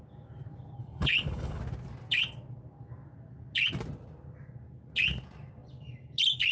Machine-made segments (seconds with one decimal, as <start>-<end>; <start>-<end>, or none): 0.8-1.6